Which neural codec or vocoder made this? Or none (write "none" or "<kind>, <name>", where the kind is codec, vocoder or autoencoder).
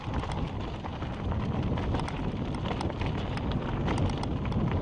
none